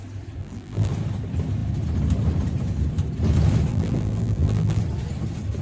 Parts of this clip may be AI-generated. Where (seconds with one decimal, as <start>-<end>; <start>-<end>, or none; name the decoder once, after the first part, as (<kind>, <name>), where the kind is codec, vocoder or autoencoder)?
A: 0.4-0.9 (vocoder, BigVGAN v2); 3.7-4.8